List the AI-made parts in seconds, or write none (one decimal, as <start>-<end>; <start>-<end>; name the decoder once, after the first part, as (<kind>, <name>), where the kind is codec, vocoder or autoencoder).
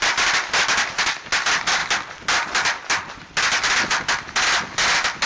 0.0-1.8 (vocoder, BigVGAN v2)